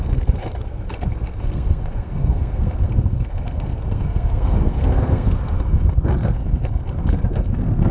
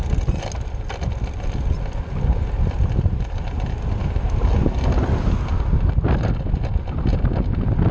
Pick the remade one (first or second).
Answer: first